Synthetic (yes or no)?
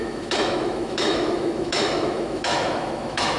yes